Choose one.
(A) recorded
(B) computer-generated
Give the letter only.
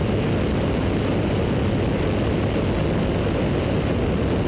A